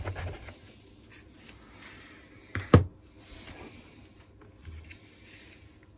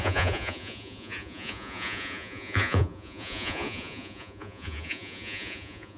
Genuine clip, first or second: first